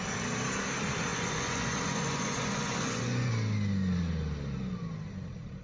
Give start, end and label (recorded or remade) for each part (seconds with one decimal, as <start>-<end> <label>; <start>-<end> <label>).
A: 0.0-1.1 recorded; 1.1-3.3 remade; 3.3-5.6 recorded